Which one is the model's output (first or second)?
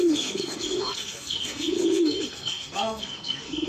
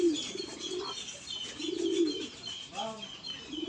first